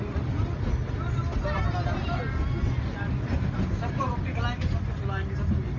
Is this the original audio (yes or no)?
yes